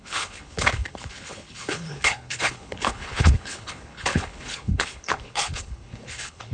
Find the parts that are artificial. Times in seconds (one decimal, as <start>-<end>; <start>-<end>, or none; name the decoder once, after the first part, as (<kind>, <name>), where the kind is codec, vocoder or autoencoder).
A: 0.0-6.5 (codec, HILCodec)